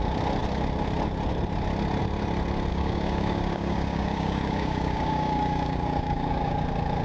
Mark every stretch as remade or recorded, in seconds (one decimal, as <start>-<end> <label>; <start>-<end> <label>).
0.0-2.7 recorded; 2.7-6.6 remade; 6.6-7.0 recorded